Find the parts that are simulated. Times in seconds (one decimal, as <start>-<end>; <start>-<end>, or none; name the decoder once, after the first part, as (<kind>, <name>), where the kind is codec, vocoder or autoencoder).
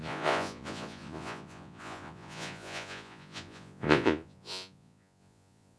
0.0-5.8 (vocoder, Vocos)